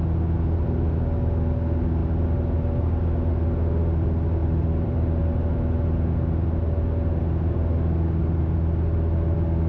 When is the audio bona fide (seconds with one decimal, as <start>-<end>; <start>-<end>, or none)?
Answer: 0.0-4.4; 5.2-9.7